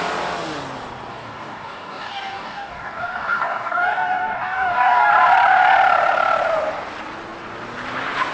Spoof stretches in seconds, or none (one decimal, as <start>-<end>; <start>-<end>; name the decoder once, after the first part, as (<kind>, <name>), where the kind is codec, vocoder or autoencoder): 1.1-5.1 (codec, DAC)